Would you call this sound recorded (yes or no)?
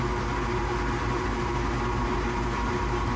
yes